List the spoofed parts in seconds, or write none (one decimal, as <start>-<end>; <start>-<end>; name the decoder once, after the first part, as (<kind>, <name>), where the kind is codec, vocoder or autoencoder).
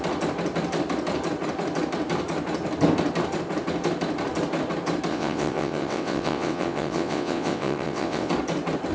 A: 5.1-8.3 (vocoder, WaveNeXt)